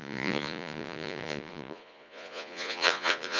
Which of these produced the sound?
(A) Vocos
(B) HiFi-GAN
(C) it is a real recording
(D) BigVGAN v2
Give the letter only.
A